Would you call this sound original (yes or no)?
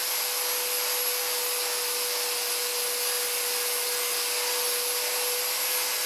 yes